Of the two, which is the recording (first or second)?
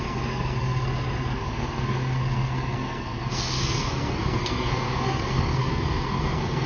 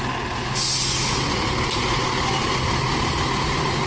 second